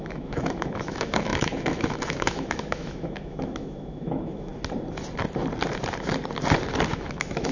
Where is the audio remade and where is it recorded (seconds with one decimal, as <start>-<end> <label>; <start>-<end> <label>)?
0.0-4.5 remade; 4.5-6.9 recorded; 6.9-7.5 remade